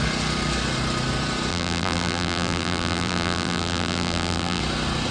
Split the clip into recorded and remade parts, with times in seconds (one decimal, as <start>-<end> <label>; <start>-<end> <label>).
0.0-1.5 recorded; 1.5-4.6 remade; 4.6-5.1 recorded